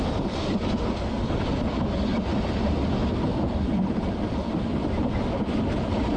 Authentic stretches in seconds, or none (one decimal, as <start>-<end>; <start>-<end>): 0.0-6.2